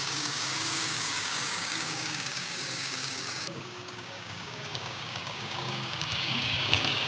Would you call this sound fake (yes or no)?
yes